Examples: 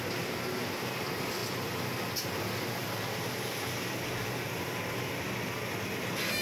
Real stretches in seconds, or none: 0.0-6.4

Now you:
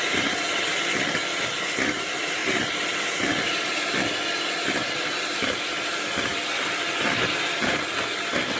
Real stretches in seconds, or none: 0.0-8.6

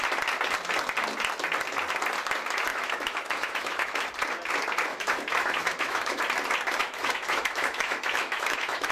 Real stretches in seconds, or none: 0.0-2.7; 4.0-4.9; 6.2-6.8

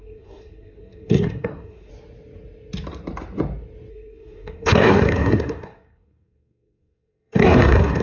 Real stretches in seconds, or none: 1.9-3.9

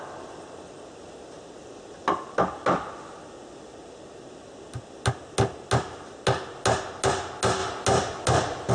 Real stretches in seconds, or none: 0.0-8.7

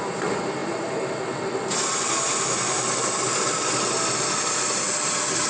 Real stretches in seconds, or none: 0.0-5.5

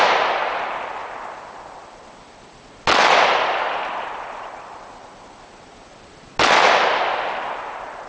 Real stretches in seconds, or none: 0.0-8.1